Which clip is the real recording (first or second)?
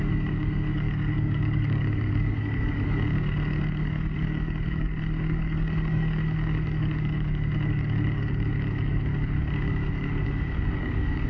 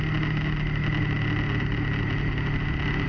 second